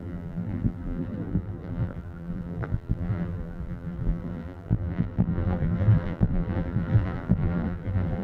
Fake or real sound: fake